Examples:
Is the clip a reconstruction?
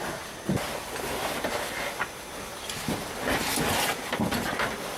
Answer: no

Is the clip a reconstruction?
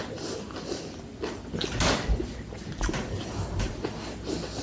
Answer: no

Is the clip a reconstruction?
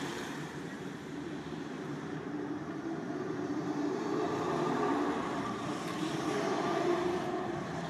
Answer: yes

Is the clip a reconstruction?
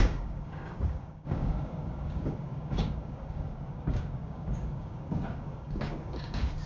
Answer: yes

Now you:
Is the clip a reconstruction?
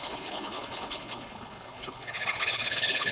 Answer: yes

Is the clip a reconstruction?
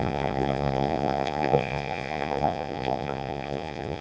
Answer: yes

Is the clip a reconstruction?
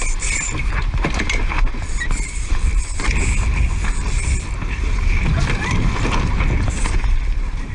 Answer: no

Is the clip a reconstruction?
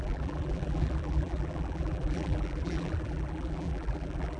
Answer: yes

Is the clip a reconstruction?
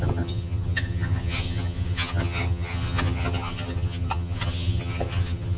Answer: yes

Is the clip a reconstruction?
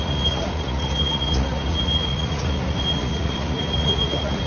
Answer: yes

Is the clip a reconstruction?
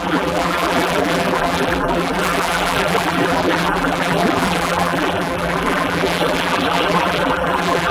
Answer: yes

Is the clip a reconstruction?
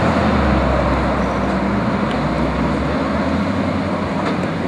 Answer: no